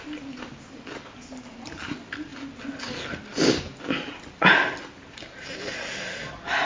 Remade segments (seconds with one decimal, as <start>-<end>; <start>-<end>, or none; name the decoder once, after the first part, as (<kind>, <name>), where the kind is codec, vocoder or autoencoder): none